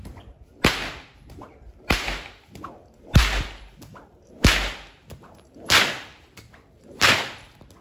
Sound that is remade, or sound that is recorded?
recorded